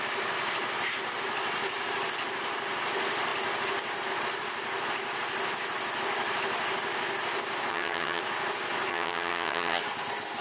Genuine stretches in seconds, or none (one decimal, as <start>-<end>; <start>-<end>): 0.0-7.7; 8.2-8.9; 9.8-10.4

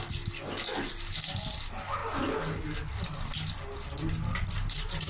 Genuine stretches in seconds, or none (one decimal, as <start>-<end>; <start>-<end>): 0.0-5.1

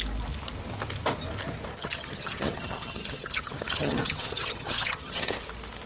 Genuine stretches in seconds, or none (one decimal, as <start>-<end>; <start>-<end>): 0.0-1.8; 5.3-5.9

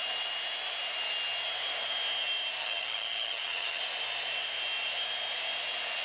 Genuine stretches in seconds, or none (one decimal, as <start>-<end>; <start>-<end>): 0.0-2.6; 3.8-6.0

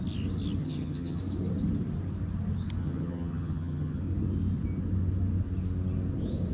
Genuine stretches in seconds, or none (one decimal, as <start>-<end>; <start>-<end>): 0.0-0.6; 1.2-2.8; 4.0-6.5